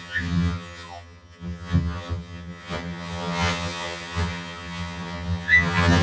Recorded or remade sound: remade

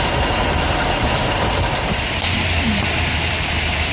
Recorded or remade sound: recorded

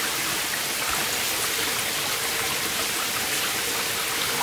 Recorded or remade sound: recorded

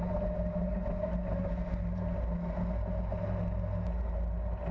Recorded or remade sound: recorded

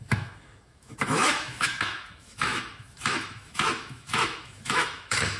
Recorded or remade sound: remade